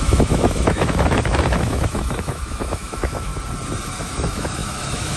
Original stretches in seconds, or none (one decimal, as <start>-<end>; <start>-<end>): 3.3-4.0